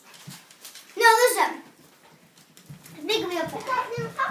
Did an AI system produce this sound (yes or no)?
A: no